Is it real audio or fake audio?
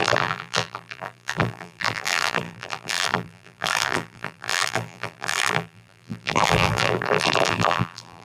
fake